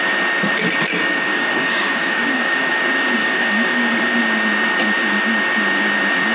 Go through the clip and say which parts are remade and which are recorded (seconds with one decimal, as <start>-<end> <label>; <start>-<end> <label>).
0.0-0.9 recorded; 0.9-2.7 remade; 2.7-3.2 recorded; 3.2-4.0 remade; 4.0-6.3 recorded

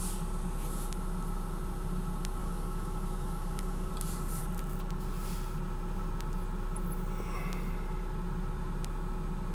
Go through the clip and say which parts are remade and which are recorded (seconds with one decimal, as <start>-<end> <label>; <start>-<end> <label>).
0.0-2.4 recorded; 2.4-3.9 remade; 3.9-9.5 recorded